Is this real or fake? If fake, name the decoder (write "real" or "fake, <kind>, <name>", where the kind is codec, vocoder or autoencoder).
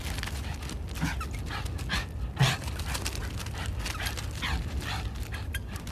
real